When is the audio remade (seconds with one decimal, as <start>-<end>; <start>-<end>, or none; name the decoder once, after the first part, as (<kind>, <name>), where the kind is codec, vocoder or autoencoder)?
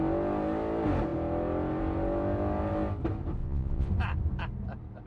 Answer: 3.4-3.9 (vocoder, Vocos)